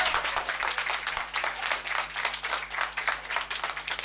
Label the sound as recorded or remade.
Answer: recorded